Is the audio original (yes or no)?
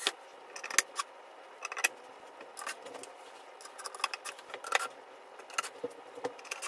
yes